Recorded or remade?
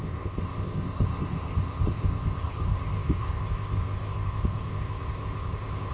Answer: remade